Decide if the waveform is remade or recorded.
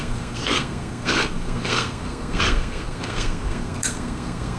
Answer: remade